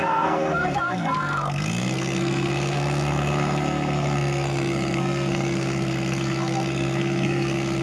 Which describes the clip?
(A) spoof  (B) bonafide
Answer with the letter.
A